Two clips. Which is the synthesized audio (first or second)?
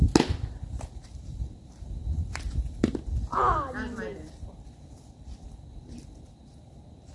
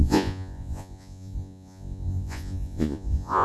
second